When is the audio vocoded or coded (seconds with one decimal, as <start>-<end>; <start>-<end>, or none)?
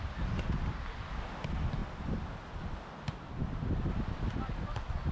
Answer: none